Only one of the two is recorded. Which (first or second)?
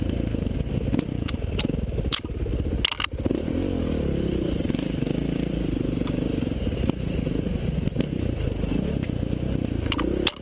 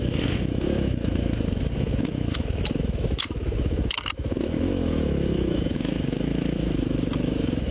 first